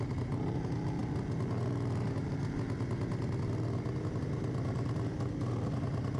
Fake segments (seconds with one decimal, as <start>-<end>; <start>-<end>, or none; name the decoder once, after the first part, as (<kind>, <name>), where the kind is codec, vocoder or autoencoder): none